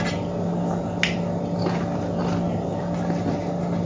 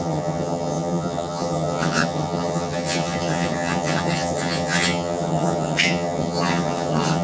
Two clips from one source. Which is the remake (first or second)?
second